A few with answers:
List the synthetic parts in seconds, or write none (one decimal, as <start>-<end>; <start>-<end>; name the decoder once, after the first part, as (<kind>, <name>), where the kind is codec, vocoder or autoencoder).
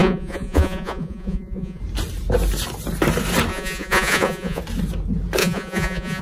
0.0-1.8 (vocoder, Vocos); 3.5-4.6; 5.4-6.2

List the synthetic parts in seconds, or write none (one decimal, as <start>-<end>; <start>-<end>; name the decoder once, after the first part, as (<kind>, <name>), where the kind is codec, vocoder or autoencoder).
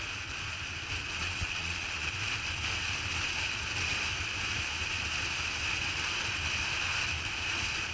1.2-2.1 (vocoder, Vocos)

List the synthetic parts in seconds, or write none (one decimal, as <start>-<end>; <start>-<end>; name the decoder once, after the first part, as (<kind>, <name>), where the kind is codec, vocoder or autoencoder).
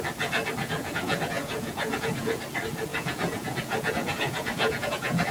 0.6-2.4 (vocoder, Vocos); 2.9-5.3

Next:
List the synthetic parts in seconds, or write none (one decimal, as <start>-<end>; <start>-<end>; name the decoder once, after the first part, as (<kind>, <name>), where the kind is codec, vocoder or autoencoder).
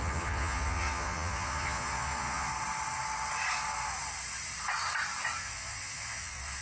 0.0-2.5 (vocoder, Vocos); 5.4-6.6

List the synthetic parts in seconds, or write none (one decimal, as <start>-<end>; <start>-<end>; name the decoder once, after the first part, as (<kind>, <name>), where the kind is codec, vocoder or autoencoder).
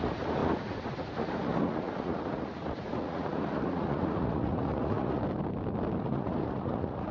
0.0-5.2 (vocoder, Vocos); 6.0-7.1